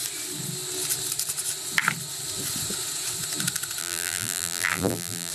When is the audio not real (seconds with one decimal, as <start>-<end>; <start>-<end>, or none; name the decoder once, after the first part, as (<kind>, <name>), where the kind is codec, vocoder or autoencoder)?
3.8-5.3 (vocoder, BigVGAN v2)